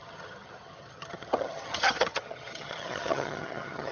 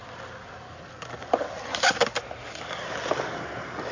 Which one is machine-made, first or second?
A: first